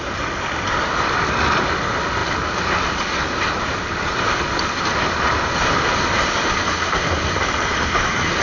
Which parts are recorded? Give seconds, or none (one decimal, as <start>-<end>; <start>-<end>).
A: 0.0-8.4